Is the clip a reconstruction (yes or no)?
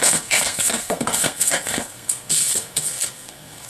yes